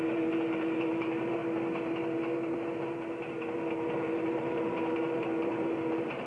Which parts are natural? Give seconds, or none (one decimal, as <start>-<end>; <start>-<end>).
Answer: 1.4-3.9